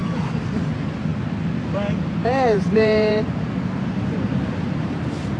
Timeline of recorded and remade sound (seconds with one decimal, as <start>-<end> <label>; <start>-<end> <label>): 0.0-0.7 remade; 0.7-2.2 recorded; 2.2-5.4 remade